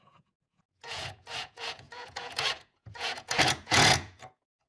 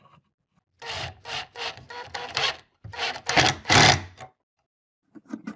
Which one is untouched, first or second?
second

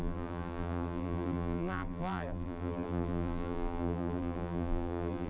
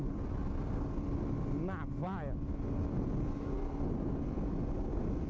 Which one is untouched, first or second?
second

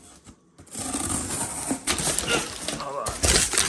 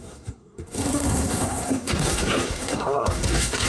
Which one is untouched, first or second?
first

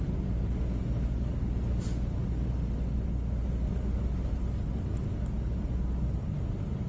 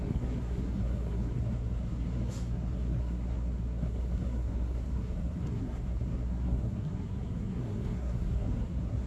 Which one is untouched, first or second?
first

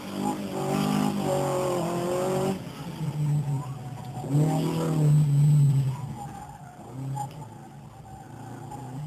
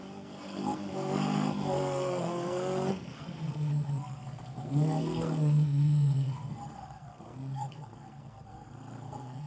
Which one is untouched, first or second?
first